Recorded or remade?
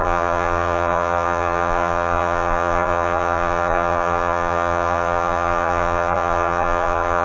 remade